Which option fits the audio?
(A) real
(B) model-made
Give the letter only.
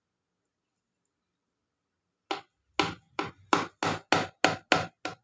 A